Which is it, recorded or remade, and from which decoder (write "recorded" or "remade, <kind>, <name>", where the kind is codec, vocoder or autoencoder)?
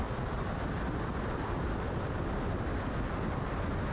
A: recorded